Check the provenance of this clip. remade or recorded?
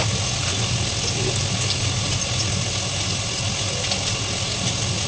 recorded